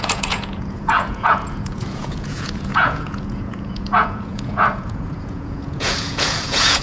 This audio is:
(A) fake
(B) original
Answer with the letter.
A